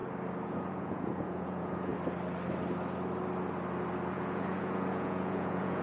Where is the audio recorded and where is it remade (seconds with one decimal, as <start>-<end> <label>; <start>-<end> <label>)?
0.0-0.5 recorded; 0.5-1.9 remade; 1.9-4.1 recorded; 4.1-5.8 remade